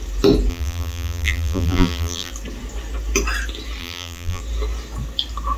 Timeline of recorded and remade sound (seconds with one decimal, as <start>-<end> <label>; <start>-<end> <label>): 0.0-0.5 recorded; 0.5-2.3 remade; 2.3-3.8 recorded; 3.8-4.4 remade; 4.4-5.6 recorded